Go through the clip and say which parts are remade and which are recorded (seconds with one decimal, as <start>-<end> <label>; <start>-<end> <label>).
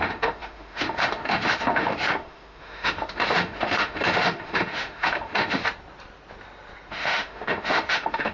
0.0-5.6 remade; 5.6-6.9 recorded; 6.9-8.3 remade